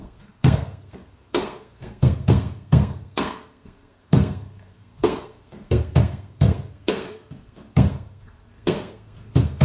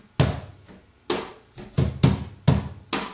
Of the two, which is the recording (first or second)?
second